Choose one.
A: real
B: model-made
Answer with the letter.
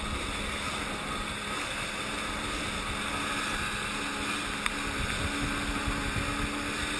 A